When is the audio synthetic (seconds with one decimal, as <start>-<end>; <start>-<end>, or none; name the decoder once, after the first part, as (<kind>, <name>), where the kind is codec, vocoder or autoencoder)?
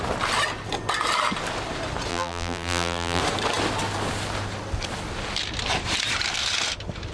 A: 2.1-3.2 (vocoder, BigVGAN v2)